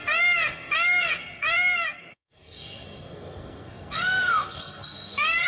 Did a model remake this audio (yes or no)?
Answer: yes